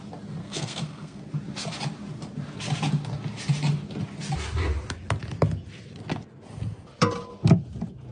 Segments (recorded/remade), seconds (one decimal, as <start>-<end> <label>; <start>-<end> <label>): 0.0-0.4 recorded; 0.4-1.2 remade; 1.2-8.1 recorded